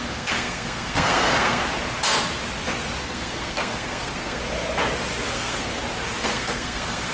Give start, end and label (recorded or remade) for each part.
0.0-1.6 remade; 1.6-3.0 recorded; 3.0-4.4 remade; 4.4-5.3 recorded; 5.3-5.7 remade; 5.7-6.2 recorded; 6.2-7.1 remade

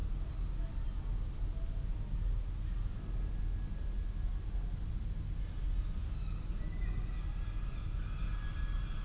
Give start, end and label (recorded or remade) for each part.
0.0-9.0 recorded

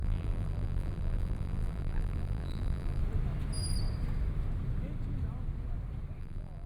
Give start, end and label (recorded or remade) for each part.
0.0-3.0 remade; 3.0-6.2 recorded; 6.2-6.7 remade

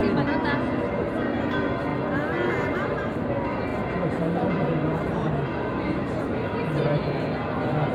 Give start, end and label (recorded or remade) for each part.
0.0-1.0 recorded; 1.0-1.9 remade; 1.9-2.5 recorded; 2.5-7.0 remade; 7.0-7.9 recorded

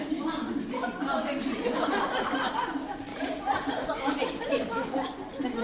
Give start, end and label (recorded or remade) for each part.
0.0-3.1 recorded; 3.1-3.9 remade; 3.9-5.6 recorded